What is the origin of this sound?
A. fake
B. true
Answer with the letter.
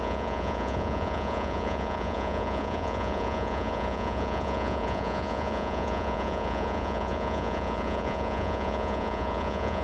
A